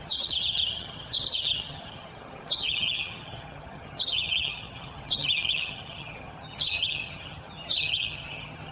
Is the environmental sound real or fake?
fake